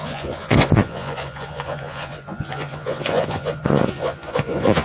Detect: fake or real fake